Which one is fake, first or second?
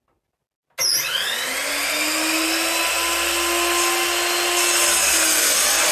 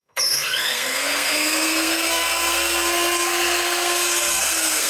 second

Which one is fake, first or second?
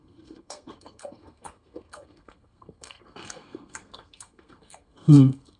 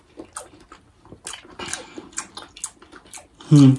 first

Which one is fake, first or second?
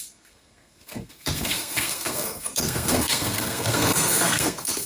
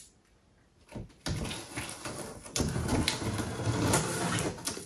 first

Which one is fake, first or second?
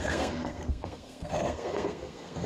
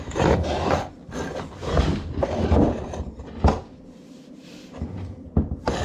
first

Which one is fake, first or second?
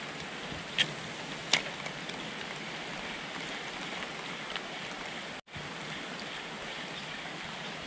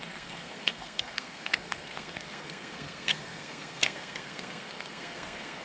second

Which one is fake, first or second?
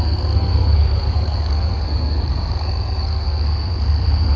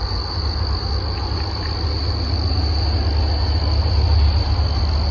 first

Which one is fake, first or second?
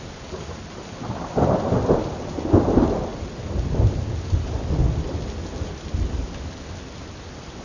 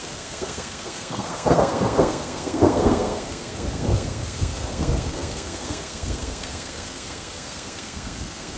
second